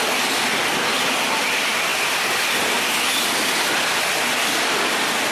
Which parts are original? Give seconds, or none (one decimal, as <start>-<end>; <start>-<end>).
none